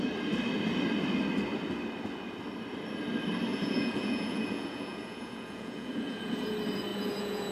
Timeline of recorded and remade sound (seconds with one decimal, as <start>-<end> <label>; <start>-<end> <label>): 0.0-3.5 recorded; 3.5-6.5 remade; 6.5-6.9 recorded; 6.9-7.5 remade